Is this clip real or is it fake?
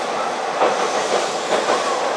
real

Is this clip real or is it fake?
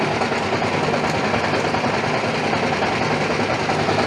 real